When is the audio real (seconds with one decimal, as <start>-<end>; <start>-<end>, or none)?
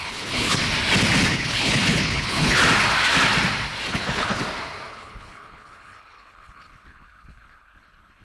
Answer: 0.6-1.3; 2.6-3.9; 4.4-4.9